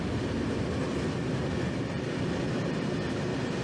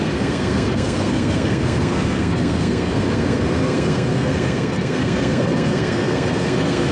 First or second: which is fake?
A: second